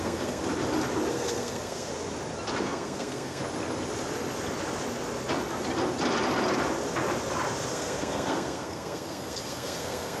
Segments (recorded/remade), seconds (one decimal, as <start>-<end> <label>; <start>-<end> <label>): 0.0-0.4 remade; 0.4-1.1 recorded; 1.1-1.9 remade; 1.9-2.6 recorded; 2.6-3.4 remade; 3.4-7.7 recorded; 7.7-10.2 remade